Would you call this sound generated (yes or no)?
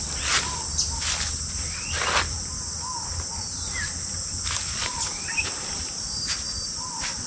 no